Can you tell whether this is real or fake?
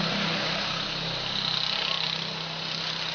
real